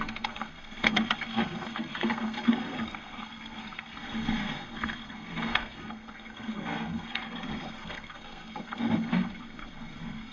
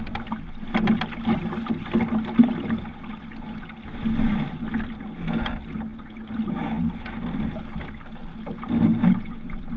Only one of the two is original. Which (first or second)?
second